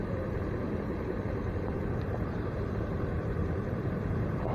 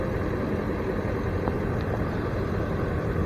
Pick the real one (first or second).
second